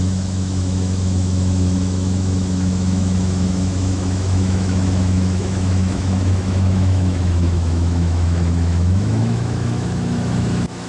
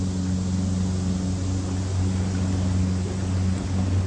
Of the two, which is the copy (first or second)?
first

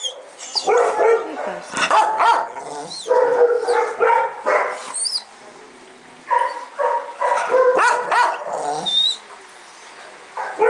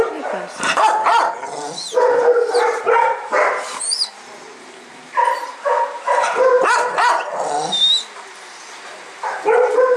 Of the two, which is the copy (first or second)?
second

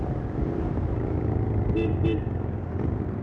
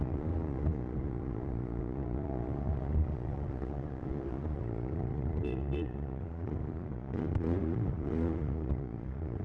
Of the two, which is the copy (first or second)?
second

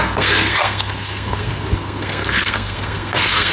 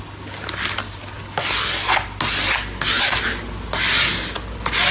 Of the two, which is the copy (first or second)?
first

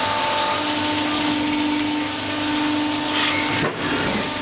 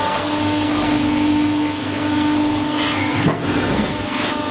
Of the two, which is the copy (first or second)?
second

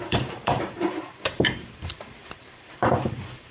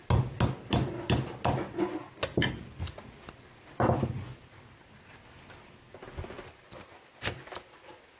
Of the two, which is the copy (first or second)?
first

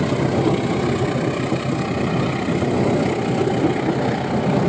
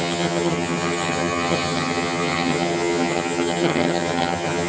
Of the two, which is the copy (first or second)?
second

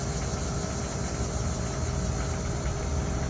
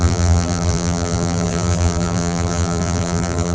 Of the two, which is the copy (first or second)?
second